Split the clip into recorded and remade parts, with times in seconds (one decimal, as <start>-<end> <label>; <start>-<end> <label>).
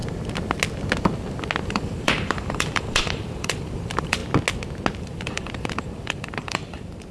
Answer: 0.0-1.7 recorded; 1.7-4.2 remade; 4.2-5.0 recorded; 5.0-7.1 remade